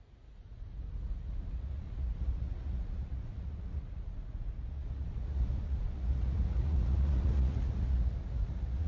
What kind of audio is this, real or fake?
fake